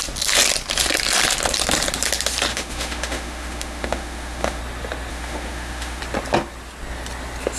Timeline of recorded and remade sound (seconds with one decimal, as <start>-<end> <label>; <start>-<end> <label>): 0.0-2.5 recorded; 2.5-4.6 remade; 4.6-5.1 recorded; 5.1-6.0 remade; 6.0-7.6 recorded